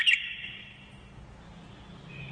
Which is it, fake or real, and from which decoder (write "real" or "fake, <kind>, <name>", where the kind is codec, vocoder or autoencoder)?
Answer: real